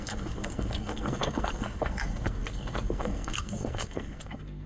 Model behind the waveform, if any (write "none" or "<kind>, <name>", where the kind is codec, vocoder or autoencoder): codec, SNAC